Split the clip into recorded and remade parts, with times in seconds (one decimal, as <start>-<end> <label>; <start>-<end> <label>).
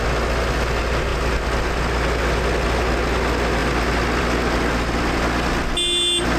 0.0-6.4 recorded